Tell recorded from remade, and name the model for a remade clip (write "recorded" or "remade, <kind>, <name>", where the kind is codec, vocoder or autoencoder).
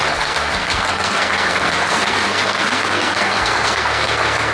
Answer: remade, codec, SNAC